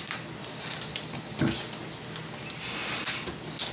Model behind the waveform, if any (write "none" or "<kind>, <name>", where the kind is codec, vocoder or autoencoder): none